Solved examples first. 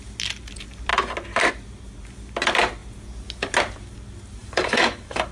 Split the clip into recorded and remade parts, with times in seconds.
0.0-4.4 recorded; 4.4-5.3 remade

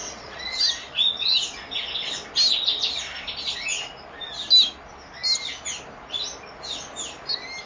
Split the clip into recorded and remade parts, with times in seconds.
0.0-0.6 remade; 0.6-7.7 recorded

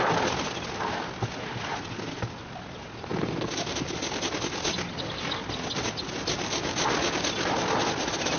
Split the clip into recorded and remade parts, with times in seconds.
0.0-8.4 recorded

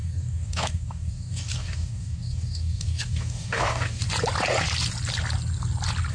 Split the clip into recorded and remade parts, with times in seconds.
0.0-4.0 remade; 4.0-6.1 recorded